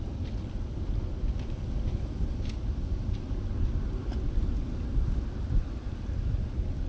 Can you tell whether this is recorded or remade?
recorded